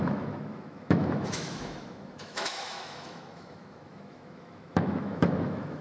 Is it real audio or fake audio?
fake